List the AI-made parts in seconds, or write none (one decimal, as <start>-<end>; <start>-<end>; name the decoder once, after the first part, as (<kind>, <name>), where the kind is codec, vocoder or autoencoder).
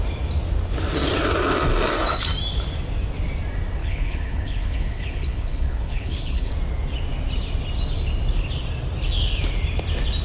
3.8-6.5 (codec, HILCodec)